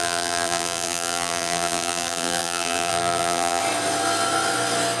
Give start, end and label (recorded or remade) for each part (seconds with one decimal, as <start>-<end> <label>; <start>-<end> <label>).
0.0-3.6 remade; 3.6-5.0 recorded